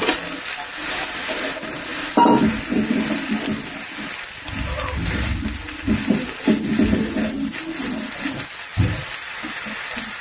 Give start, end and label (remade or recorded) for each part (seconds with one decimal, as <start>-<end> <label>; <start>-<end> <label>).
0.0-10.2 recorded